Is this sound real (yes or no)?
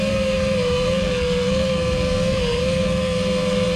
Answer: no